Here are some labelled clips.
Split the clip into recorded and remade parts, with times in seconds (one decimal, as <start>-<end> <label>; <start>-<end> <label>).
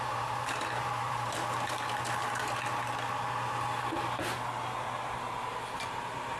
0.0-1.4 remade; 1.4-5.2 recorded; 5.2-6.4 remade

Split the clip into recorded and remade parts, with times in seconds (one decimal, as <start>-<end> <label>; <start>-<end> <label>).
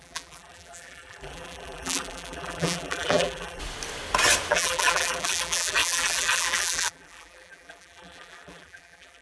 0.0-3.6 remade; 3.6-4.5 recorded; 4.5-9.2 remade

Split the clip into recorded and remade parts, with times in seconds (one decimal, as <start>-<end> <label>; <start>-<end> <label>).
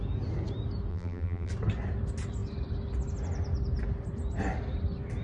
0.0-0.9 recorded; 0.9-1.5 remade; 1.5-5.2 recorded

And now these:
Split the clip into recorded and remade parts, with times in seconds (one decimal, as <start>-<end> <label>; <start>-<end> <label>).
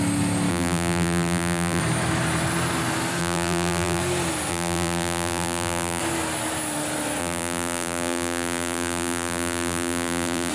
0.0-0.5 recorded; 0.5-1.8 remade; 1.8-3.2 recorded; 3.2-4.0 remade; 4.0-4.5 recorded; 4.5-6.0 remade; 6.0-7.2 recorded; 7.2-10.5 remade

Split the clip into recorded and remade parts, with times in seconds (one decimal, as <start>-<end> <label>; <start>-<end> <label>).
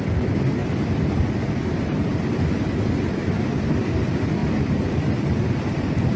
0.0-6.2 remade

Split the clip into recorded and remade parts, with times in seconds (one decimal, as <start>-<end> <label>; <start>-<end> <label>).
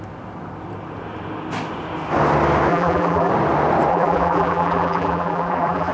0.0-2.7 recorded; 2.7-3.3 remade; 3.3-3.9 recorded; 3.9-5.9 remade